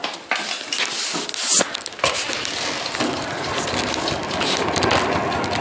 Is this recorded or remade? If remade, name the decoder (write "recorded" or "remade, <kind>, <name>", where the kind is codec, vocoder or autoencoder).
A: recorded